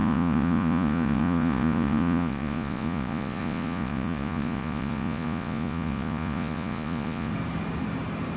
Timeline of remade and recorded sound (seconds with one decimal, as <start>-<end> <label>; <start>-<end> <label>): 0.0-7.3 remade; 7.3-8.4 recorded